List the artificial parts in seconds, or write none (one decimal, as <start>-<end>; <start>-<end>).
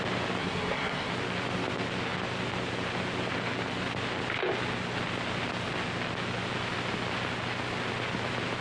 0.4-1.1